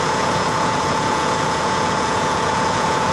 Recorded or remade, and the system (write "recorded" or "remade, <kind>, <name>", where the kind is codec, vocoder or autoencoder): remade, vocoder, Vocos